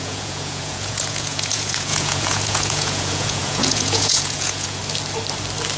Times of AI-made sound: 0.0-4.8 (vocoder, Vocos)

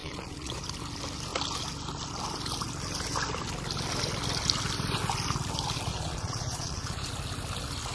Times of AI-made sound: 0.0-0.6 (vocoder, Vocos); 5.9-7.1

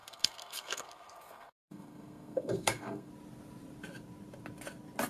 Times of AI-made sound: 0.0-3.1 (codec, SNAC)

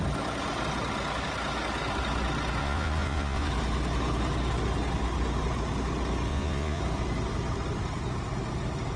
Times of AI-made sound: 2.6-3.5 (vocoder, Vocos); 6.3-6.8

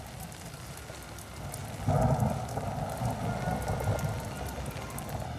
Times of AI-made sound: none

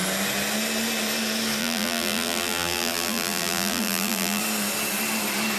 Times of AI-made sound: 1.6-4.4 (vocoder, BigVGAN v2)